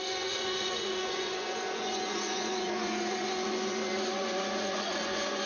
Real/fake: fake